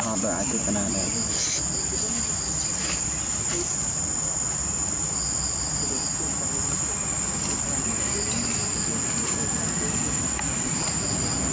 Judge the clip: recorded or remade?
recorded